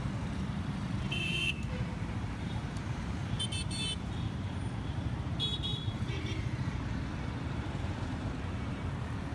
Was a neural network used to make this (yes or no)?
yes